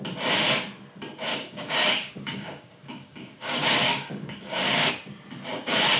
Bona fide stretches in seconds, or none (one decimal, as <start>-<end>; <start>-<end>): 0.0-1.3; 4.9-6.0